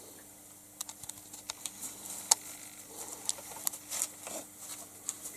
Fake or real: real